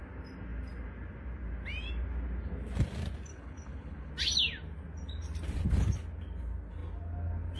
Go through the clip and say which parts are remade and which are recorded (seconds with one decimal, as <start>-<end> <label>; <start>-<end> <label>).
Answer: 0.0-3.3 recorded; 3.3-4.1 remade; 4.1-7.6 recorded